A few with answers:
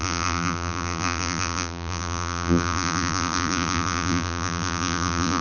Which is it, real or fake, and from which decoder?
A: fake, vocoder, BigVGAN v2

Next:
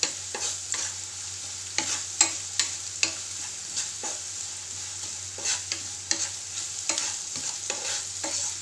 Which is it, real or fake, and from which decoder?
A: real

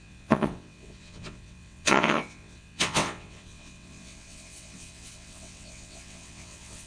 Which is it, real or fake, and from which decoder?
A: fake, vocoder, WaveNeXt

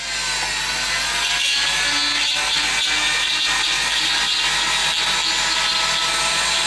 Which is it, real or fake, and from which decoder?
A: real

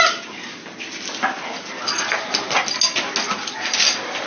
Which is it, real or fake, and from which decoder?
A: real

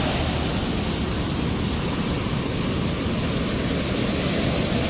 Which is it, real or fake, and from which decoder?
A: real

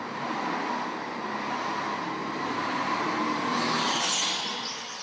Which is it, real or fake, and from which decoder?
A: real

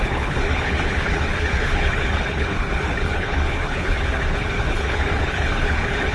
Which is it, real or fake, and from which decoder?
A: fake, codec, HILCodec